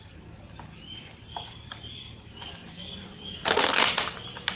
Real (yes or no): no